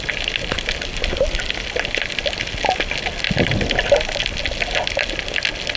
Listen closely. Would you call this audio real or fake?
real